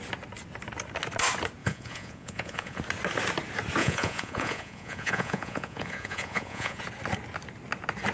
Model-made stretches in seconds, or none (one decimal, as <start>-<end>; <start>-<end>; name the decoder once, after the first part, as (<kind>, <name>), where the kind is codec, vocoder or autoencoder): 1.6-2.8 (vocoder, Vocos); 3.8-6.8